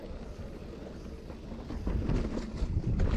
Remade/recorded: recorded